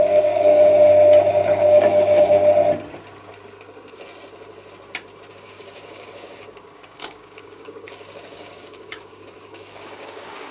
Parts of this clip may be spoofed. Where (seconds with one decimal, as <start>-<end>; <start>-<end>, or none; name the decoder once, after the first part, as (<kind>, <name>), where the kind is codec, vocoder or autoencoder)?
0.0-0.7 (codec, DAC); 1.3-2.4; 5.3-10.5